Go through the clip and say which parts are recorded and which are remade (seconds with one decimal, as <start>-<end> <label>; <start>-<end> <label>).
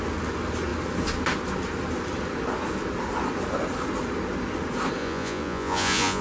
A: 0.0-5.0 recorded; 5.0-6.2 remade